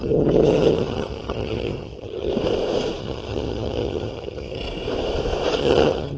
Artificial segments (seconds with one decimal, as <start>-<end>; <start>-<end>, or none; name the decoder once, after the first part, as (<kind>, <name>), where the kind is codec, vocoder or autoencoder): 0.0-2.3 (vocoder, HiFi-GAN); 3.0-4.6; 5.6-6.2

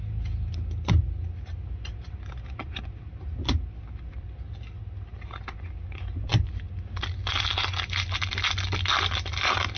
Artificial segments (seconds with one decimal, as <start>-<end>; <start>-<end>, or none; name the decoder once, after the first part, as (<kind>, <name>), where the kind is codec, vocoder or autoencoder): none

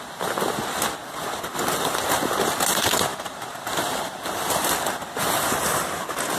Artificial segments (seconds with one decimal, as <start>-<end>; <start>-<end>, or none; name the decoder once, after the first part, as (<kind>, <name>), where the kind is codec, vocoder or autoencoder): 3.1-4.7 (vocoder, BigVGAN v2)

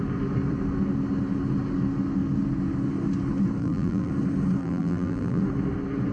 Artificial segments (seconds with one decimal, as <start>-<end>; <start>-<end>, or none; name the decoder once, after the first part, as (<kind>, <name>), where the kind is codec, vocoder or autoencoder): 3.6-4.1 (vocoder, BigVGAN v2); 4.6-5.4

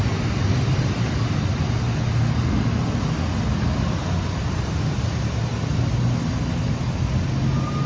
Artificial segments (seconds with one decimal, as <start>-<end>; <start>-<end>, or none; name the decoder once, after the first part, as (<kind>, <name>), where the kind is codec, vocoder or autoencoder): none

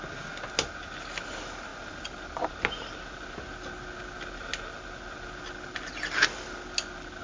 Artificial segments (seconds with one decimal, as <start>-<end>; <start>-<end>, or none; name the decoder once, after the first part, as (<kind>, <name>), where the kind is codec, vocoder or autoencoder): none